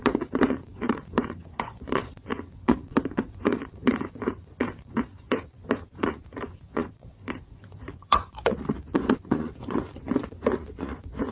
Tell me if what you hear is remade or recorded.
remade